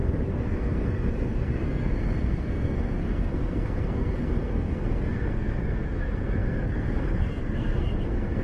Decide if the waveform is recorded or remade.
remade